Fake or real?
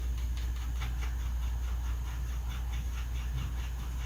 real